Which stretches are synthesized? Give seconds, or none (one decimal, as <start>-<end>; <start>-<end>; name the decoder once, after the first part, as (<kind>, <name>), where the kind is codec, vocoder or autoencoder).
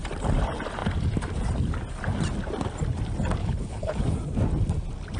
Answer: 3.4-4.0 (codec, HILCodec)